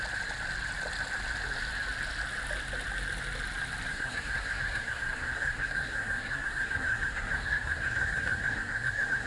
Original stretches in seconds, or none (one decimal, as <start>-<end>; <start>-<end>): 0.0-3.9